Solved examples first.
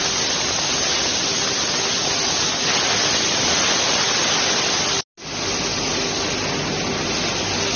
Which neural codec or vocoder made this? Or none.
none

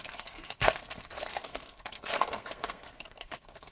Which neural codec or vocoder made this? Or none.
codec, SNAC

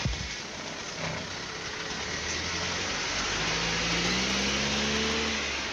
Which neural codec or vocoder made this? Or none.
none